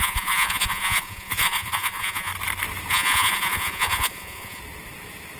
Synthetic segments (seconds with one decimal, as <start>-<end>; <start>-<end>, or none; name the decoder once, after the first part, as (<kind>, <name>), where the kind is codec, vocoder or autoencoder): 0.0-2.3 (vocoder, Vocos); 2.9-4.6